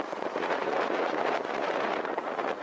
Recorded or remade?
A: remade